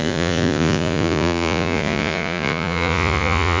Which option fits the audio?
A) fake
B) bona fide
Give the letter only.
A